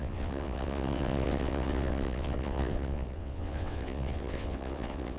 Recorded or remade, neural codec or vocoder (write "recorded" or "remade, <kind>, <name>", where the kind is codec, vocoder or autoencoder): remade, vocoder, WaveNeXt